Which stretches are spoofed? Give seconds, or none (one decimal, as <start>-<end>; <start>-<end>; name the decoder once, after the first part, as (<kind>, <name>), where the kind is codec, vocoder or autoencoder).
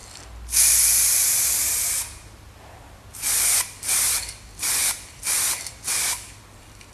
1.0-6.9 (vocoder, BigVGAN v2)